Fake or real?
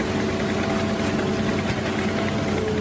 real